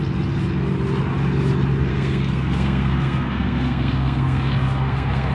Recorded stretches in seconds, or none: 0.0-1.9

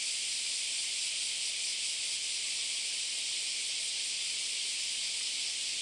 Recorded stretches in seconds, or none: 0.0-5.8

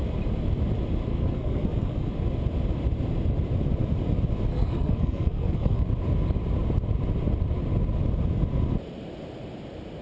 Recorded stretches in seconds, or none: 0.0-1.1; 2.1-4.5; 5.9-10.0

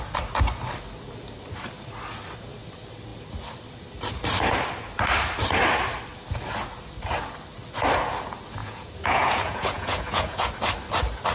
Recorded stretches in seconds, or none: 0.0-8.6; 10.5-11.3

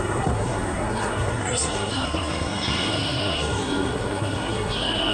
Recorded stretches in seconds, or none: none